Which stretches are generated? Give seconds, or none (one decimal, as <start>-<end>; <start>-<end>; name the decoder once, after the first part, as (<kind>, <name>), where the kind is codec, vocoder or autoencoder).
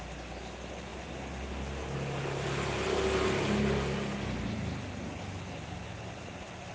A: none